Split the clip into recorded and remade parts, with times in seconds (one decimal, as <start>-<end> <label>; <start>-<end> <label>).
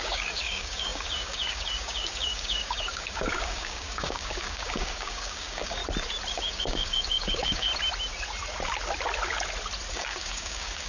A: 0.0-5.8 remade; 5.8-6.3 recorded; 6.3-7.7 remade; 7.7-9.9 recorded; 9.9-10.9 remade